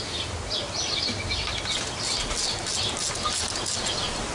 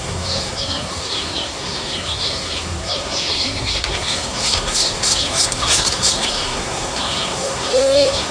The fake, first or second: second